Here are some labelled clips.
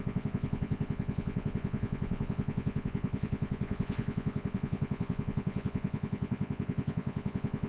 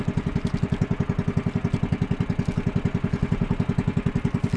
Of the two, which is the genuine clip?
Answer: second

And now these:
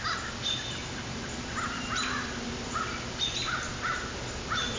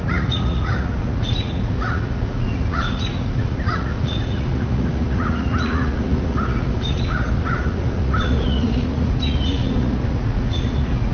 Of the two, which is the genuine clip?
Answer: first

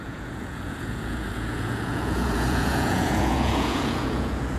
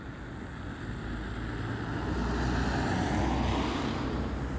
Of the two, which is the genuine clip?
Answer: second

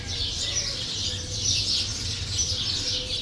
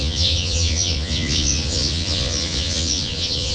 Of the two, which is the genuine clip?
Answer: first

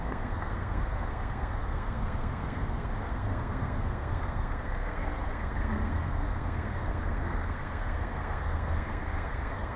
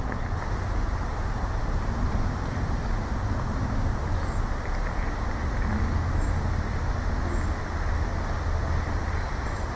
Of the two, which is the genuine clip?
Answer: second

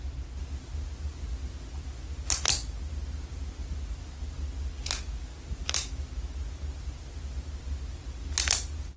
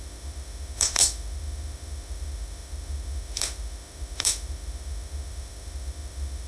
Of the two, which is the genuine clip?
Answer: first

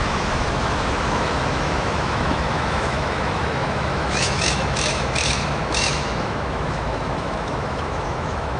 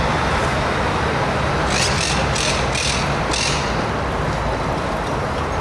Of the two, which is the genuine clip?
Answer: second